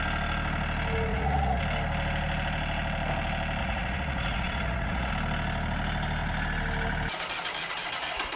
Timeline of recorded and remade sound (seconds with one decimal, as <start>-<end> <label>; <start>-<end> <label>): 0.0-1.1 recorded; 1.1-1.6 remade; 1.6-3.6 recorded; 3.6-5.1 remade; 5.1-8.4 recorded